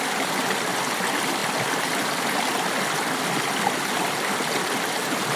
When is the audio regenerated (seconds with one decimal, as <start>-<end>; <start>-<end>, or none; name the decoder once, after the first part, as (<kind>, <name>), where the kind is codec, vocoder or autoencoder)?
none